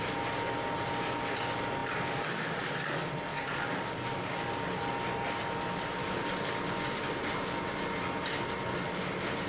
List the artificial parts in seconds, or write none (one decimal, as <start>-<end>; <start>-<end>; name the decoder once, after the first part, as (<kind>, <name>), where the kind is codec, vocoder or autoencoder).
3.3-4.5 (codec, DAC); 6.0-6.6